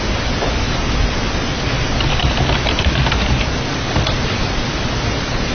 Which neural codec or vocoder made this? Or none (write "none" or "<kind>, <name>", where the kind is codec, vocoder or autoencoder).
none